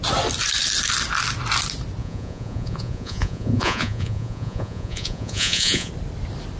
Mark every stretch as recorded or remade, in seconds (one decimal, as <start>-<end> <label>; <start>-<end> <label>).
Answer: 0.0-2.0 recorded; 2.0-5.9 remade; 5.9-6.6 recorded